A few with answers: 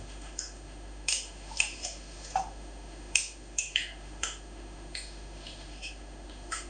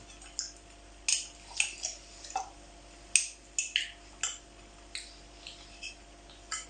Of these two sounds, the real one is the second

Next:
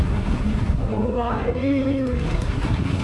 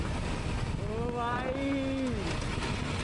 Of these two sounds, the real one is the second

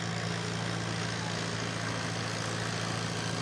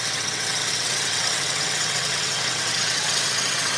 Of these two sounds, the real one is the first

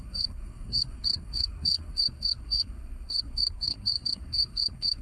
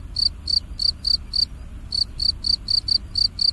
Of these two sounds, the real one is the second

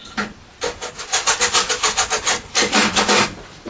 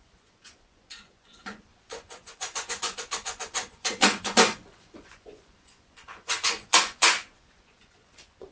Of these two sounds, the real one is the first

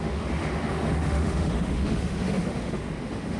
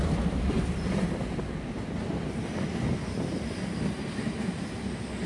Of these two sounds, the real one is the second